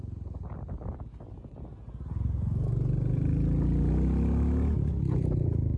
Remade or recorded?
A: recorded